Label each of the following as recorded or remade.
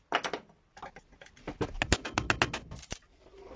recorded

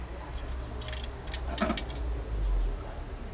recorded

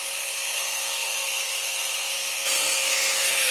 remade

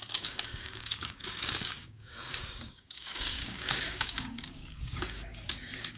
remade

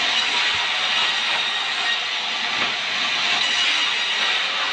recorded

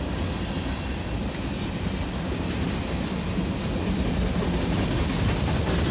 recorded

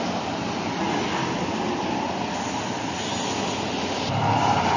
recorded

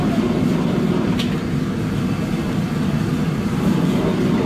recorded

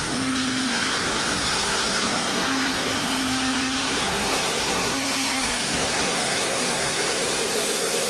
remade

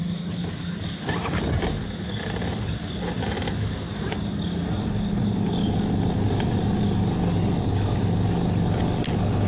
recorded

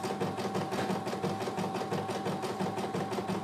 recorded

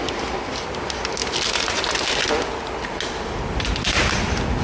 recorded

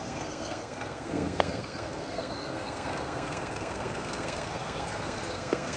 remade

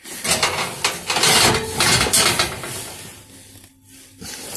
recorded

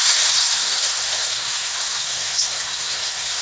remade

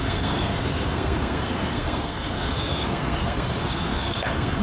remade